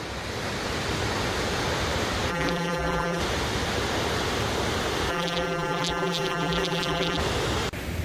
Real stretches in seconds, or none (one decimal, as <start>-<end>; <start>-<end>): 0.0-2.3; 3.2-5.1; 7.2-8.0